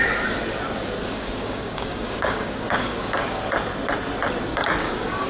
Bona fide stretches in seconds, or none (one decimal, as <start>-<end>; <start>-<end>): 0.0-1.1; 3.4-4.5